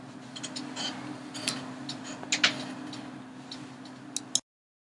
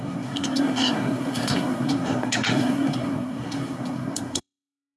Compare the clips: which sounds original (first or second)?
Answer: first